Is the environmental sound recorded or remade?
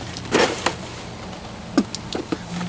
recorded